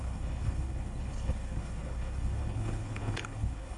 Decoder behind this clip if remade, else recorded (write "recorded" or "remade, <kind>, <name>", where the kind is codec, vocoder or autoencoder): remade, codec, HILCodec